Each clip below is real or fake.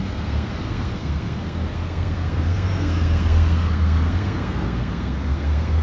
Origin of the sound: fake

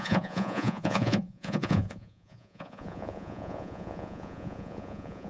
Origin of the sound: fake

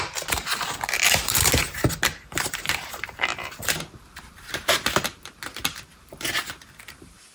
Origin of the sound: fake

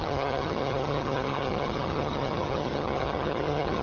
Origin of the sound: fake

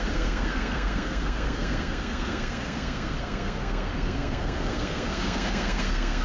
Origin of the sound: fake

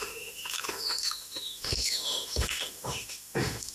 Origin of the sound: fake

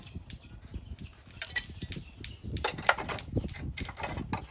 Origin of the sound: real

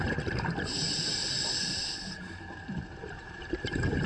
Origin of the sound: fake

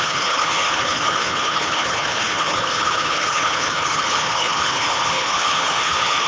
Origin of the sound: fake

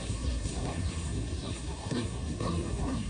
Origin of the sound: fake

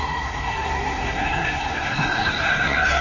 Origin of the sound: fake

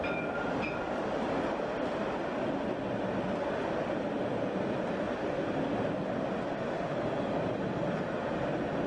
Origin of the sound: real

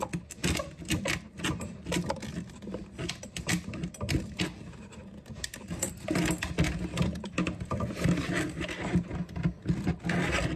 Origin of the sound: real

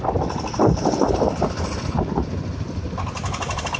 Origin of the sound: real